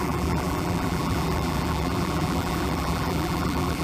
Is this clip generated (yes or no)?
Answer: yes